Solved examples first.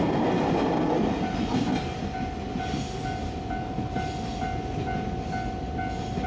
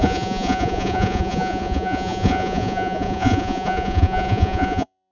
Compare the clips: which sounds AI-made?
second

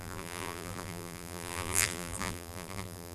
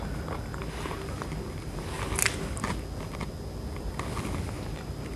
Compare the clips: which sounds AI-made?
first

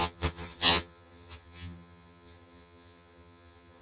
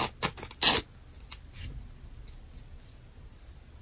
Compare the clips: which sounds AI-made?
first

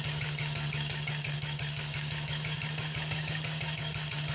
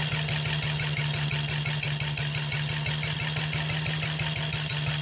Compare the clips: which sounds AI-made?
first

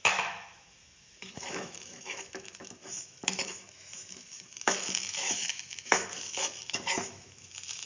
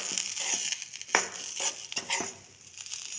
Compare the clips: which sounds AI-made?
first